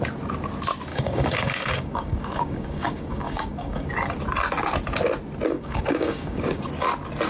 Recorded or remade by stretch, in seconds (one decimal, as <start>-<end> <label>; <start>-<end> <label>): 0.0-0.9 recorded; 0.9-3.9 remade; 3.9-5.5 recorded; 5.5-6.6 remade; 6.6-7.3 recorded